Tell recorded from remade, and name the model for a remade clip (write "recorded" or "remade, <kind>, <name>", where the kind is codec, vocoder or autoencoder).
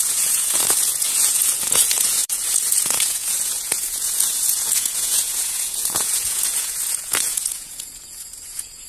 remade, vocoder, Vocos